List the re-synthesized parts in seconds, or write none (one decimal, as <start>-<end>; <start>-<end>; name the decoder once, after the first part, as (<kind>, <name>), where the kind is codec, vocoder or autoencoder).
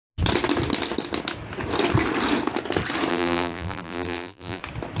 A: 3.1-4.6 (vocoder, BigVGAN v2)